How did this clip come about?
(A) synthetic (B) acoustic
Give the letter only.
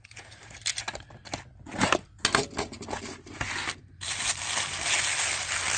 B